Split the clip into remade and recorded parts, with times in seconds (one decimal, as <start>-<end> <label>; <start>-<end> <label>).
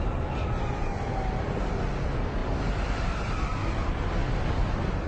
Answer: 0.0-5.1 recorded